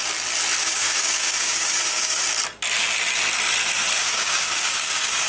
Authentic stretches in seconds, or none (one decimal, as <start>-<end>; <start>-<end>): 0.0-0.6; 2.2-4.0